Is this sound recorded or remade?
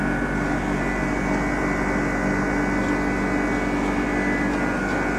recorded